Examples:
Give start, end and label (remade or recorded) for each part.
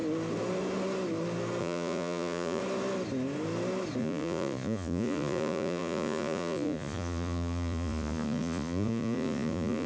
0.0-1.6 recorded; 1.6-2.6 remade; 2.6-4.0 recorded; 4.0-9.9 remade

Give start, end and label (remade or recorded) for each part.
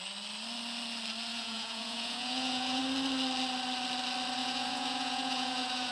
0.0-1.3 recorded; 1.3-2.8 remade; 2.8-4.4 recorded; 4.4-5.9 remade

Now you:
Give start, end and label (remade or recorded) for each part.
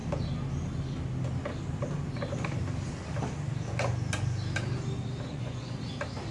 0.0-5.3 recorded; 5.3-5.8 remade; 5.8-6.3 recorded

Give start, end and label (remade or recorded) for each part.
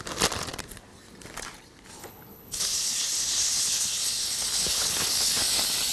0.0-2.0 recorded; 2.0-5.4 remade; 5.4-5.9 recorded